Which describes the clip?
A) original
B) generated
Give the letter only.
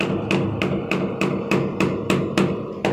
A